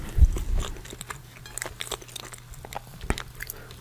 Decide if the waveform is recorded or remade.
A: recorded